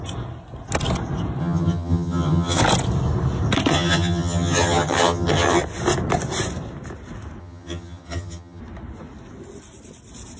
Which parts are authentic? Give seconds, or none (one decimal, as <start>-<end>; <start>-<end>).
0.0-1.4; 2.6-3.7; 5.6-7.4; 8.6-10.4